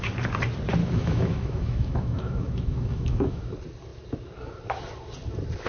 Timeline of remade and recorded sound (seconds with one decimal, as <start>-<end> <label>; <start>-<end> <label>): 0.0-0.8 recorded; 0.8-3.5 remade; 3.5-5.7 recorded